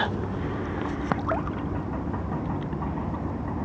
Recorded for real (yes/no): yes